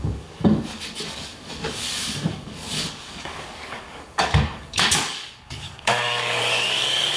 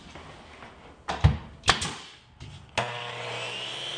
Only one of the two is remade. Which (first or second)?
first